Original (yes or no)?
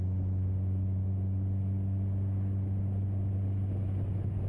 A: yes